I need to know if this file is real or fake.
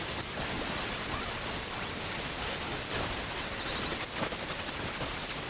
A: real